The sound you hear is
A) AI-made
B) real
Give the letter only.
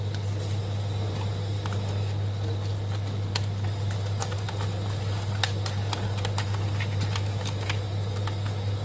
B